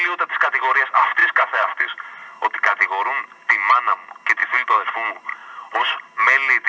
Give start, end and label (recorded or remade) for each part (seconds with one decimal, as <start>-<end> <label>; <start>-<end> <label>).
0.0-1.2 recorded; 1.2-2.4 remade; 2.4-4.4 recorded; 4.4-4.9 remade; 4.9-5.4 recorded; 5.4-6.0 remade; 6.0-6.7 recorded